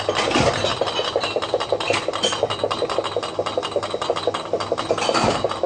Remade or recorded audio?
recorded